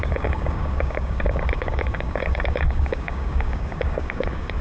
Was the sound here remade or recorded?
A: remade